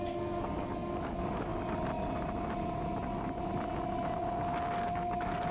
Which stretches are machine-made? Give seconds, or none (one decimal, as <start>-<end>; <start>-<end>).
0.0-1.5; 4.8-5.5